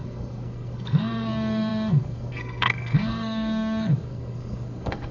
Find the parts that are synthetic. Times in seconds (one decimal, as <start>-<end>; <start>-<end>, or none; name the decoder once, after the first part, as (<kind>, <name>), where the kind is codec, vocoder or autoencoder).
0.0-5.1 (codec, SNAC)